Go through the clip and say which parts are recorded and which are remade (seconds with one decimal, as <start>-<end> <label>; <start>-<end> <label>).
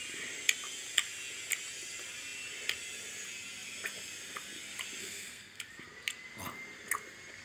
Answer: 0.0-5.0 recorded; 5.0-5.6 remade; 5.6-7.4 recorded